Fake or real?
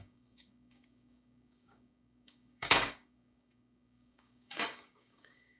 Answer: fake